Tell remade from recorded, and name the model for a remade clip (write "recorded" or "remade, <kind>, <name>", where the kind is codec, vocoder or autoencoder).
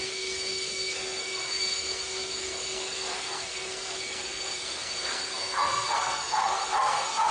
remade, codec, SNAC